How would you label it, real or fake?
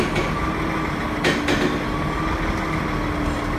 real